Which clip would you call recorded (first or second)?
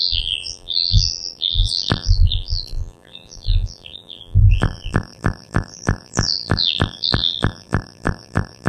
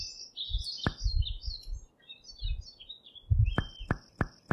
second